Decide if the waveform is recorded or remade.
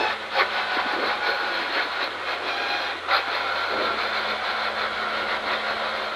recorded